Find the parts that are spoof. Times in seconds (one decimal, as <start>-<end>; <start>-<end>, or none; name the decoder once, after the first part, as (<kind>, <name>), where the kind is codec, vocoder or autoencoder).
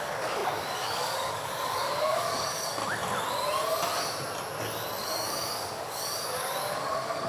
0.0-2.8 (codec, DAC); 5.0-7.3